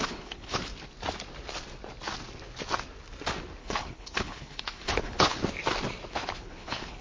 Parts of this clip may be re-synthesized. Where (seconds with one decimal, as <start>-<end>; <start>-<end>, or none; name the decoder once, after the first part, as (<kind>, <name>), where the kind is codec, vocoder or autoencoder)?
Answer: 0.0-0.7 (codec, HILCodec); 3.6-5.4; 6.1-7.0